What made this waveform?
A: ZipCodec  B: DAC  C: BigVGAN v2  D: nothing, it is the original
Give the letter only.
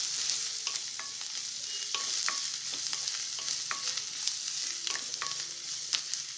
D